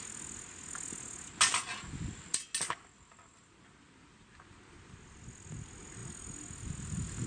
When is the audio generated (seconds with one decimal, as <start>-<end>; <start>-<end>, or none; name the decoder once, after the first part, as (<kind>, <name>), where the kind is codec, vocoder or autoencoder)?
none